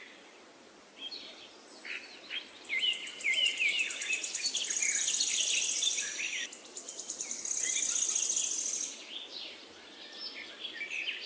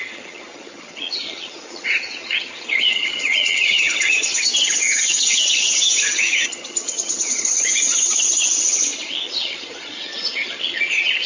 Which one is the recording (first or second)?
first